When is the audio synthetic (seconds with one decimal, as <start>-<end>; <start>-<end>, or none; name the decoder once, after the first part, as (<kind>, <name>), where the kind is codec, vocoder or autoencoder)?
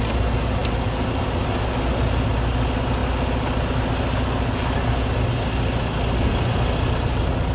0.6-1.2 (vocoder, BigVGAN v2)